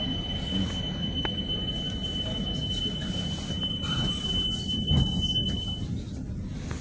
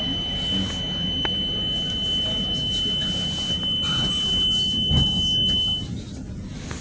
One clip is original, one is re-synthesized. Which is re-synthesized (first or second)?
first